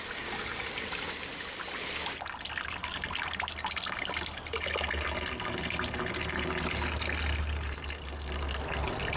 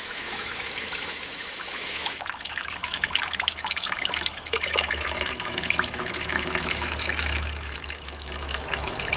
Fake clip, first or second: second